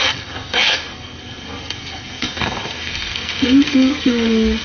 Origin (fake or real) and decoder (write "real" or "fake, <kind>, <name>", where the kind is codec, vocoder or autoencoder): fake, codec, SNAC